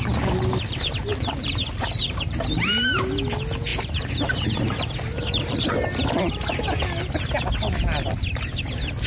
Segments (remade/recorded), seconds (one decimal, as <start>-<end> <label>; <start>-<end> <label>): 0.0-1.1 recorded; 1.1-2.4 remade; 2.4-3.7 recorded; 3.7-6.6 remade; 6.6-9.1 recorded